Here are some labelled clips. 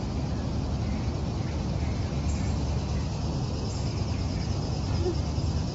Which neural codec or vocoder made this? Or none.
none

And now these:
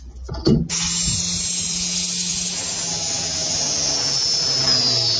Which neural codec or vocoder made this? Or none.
none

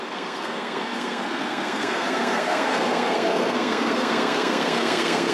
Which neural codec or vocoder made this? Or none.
codec, SNAC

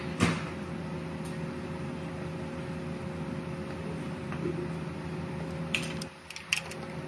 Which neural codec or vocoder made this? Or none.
none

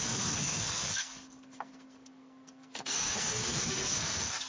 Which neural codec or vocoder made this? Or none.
codec, SNAC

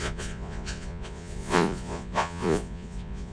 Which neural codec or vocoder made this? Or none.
vocoder, Vocos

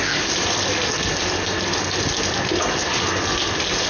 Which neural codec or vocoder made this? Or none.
none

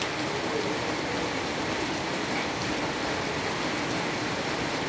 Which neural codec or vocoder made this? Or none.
none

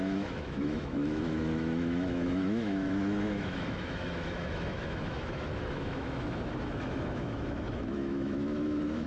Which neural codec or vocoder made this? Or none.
autoencoder, DAC-VAE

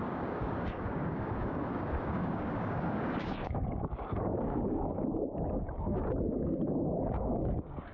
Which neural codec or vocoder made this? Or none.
codec, DAC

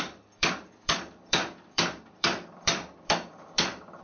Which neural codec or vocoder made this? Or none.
vocoder, BigVGAN v2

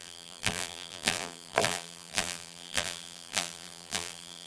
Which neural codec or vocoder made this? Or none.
vocoder, BigVGAN v2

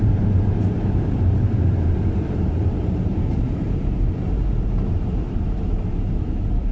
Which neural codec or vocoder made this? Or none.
vocoder, BigVGAN v2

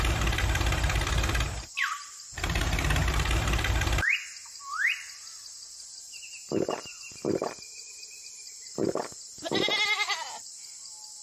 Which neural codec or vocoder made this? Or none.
none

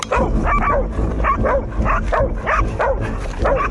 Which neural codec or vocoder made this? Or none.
none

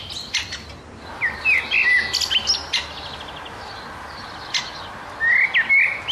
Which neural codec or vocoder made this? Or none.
none